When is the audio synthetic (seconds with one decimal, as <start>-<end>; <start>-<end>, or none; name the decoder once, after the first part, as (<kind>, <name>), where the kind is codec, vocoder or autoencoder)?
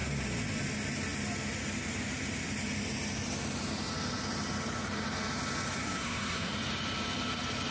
5.8-6.5 (codec, SNAC)